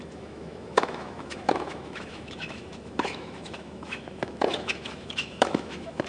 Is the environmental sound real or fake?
fake